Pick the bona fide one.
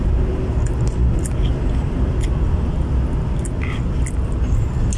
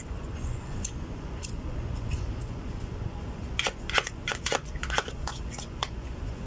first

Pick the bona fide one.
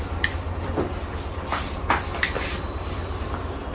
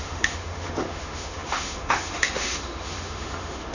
first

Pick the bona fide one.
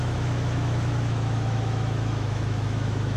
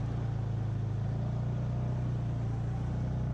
second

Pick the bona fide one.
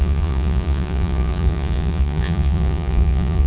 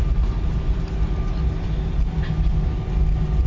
second